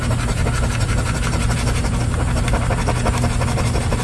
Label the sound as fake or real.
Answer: real